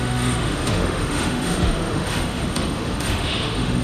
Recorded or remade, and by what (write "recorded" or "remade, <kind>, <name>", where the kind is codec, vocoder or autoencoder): remade, autoencoder, DAC-VAE